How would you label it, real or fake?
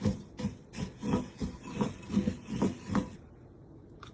real